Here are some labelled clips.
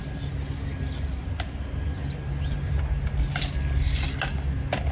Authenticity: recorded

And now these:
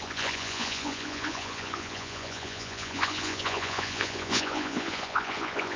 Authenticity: remade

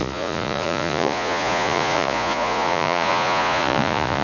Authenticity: remade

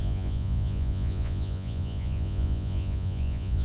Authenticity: remade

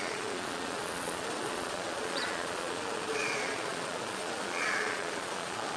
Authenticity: remade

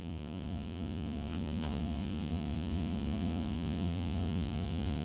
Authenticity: remade